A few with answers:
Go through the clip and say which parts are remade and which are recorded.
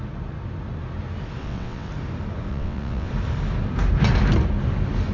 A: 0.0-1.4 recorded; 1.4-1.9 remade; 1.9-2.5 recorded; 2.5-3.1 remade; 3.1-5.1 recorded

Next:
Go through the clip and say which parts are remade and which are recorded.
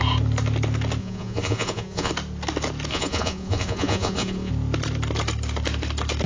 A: 0.0-1.0 recorded; 1.0-2.1 remade; 2.1-2.9 recorded; 2.9-4.5 remade; 4.5-6.3 recorded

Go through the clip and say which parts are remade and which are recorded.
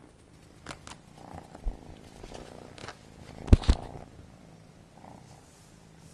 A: 0.0-6.1 recorded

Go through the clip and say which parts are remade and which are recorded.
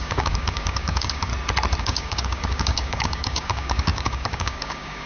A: 0.0-1.3 remade; 1.3-1.8 recorded; 1.8-5.1 remade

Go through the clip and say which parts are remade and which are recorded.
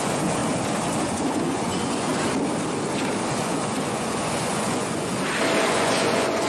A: 0.0-0.4 remade; 0.4-1.0 recorded; 1.0-2.1 remade; 2.1-3.3 recorded; 3.3-5.1 remade; 5.1-5.6 recorded; 5.6-6.5 remade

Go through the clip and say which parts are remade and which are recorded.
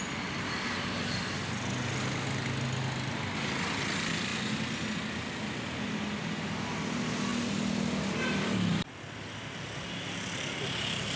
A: 0.0-11.2 recorded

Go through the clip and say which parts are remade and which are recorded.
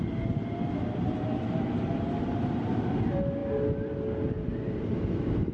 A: 0.0-5.5 recorded